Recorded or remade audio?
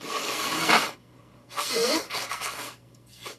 remade